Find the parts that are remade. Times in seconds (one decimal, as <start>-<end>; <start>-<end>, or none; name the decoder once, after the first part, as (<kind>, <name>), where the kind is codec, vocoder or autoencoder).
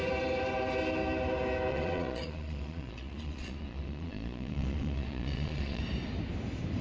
1.7-5.8 (vocoder, Vocos)